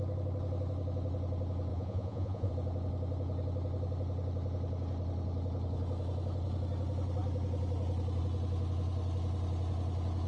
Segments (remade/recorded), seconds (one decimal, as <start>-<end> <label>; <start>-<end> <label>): 0.0-1.7 recorded; 1.7-2.5 remade; 2.5-10.3 recorded